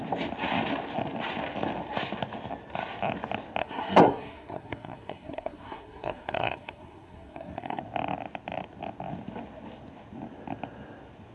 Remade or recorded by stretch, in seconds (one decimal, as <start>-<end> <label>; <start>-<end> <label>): 0.0-3.6 recorded; 3.6-7.8 remade; 7.8-11.3 recorded